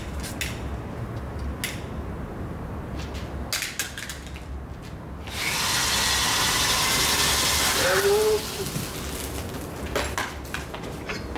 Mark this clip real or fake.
real